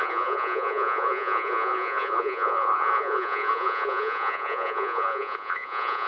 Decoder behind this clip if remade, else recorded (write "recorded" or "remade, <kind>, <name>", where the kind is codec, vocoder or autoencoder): remade, vocoder, Vocos